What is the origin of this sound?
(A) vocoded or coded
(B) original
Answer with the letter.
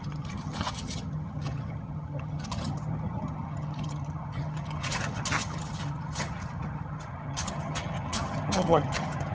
A